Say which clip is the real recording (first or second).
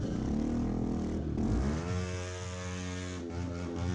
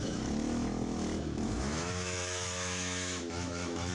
first